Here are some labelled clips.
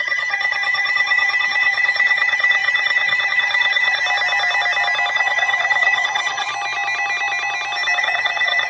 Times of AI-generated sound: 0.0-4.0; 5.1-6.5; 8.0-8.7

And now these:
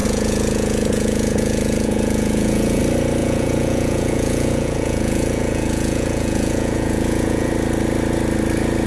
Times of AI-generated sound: 0.0-2.8; 3.2-7.5

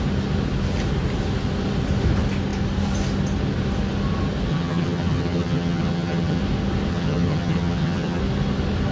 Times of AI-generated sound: 4.5-6.4; 6.9-8.2